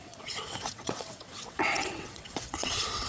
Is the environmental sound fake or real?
fake